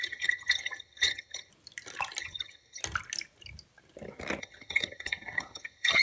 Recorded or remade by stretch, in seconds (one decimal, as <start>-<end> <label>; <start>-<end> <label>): 0.0-1.5 remade; 1.5-2.2 recorded; 2.2-2.8 remade; 2.8-4.4 recorded; 4.4-6.0 remade